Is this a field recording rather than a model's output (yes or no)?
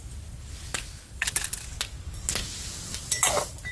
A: yes